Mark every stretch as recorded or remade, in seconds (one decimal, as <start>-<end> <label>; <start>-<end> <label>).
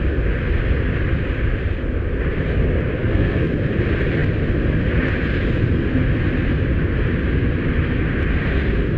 0.0-3.0 recorded; 3.0-3.5 remade; 3.5-9.0 recorded